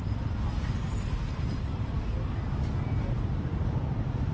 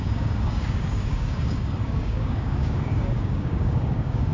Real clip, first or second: first